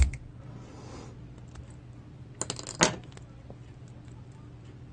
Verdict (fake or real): real